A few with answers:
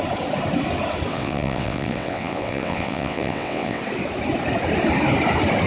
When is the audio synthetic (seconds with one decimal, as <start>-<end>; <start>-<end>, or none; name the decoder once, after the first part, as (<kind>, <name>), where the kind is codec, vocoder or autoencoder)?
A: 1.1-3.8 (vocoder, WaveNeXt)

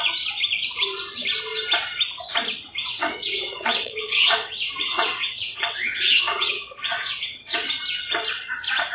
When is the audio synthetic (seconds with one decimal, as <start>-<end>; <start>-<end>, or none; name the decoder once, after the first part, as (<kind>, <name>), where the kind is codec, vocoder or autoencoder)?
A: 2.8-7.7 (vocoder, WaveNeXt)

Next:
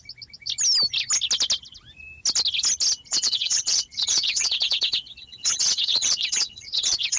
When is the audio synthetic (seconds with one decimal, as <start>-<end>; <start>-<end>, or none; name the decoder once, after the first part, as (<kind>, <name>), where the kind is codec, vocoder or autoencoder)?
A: 3.1-7.2 (vocoder, WaveNeXt)